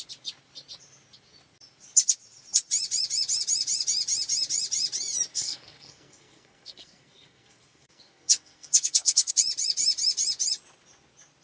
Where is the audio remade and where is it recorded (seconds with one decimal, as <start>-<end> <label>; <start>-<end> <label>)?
0.0-5.3 recorded; 5.3-9.3 remade; 9.3-11.4 recorded